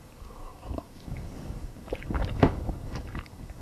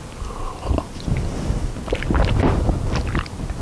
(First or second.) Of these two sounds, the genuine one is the second